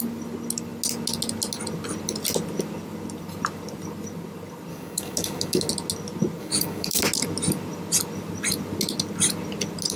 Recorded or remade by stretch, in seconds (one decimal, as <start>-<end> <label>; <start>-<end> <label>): 0.0-4.7 recorded; 4.7-5.7 remade; 5.7-6.4 recorded; 6.4-7.0 remade; 7.0-10.0 recorded